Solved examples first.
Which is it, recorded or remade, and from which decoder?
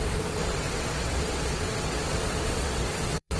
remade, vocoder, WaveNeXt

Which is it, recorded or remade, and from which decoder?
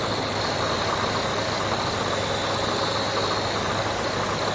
recorded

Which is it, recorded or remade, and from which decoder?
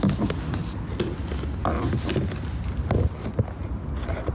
recorded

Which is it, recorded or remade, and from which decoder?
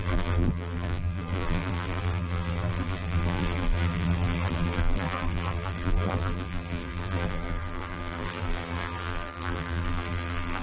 remade, vocoder, BigVGAN v2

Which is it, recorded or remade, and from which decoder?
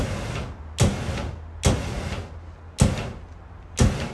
recorded